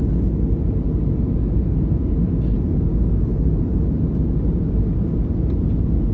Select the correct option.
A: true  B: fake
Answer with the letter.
A